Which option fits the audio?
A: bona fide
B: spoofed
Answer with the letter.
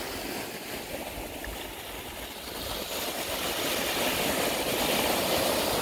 A